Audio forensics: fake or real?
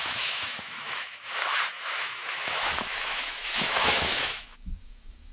fake